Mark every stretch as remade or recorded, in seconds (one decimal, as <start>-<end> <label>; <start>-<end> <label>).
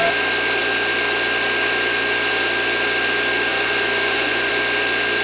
0.0-3.5 recorded; 3.5-4.5 remade; 4.5-5.2 recorded